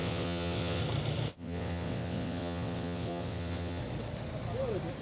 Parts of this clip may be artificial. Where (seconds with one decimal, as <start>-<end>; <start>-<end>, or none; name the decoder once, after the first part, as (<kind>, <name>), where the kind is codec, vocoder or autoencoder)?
0.0-0.8 (vocoder, WaveNeXt); 1.3-3.8